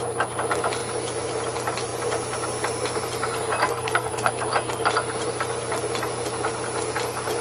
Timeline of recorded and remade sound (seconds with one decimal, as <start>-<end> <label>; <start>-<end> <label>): 0.0-3.7 recorded; 3.7-4.3 remade; 4.3-7.4 recorded